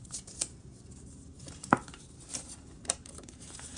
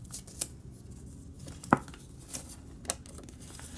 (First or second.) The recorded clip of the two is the second